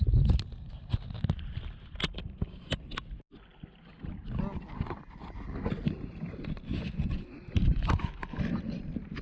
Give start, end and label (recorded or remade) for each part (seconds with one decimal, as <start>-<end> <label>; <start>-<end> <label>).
0.0-9.2 recorded